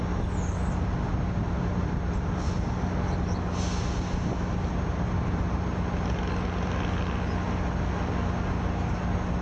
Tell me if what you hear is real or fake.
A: real